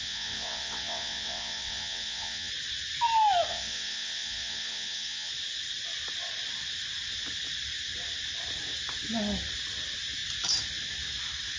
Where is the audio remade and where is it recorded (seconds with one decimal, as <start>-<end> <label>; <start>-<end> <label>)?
0.0-2.5 remade; 2.5-3.5 recorded; 3.5-5.3 remade; 5.3-11.6 recorded